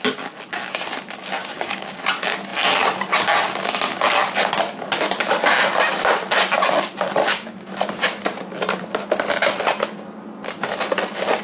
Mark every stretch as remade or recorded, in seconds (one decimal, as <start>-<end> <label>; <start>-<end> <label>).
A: 0.0-1.4 recorded; 1.4-2.0 remade; 2.0-7.2 recorded; 7.2-7.7 remade; 7.7-11.4 recorded